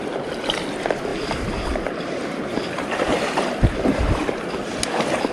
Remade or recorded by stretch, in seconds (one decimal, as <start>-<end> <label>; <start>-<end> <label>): 0.0-1.1 recorded; 1.1-4.3 remade; 4.3-5.3 recorded